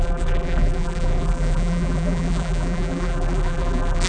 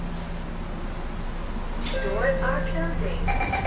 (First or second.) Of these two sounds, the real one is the second